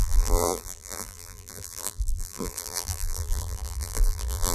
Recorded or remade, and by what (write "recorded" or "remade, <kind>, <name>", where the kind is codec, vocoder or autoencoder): remade, vocoder, BigVGAN v2